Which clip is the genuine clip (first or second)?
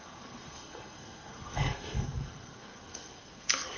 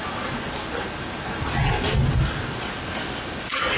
second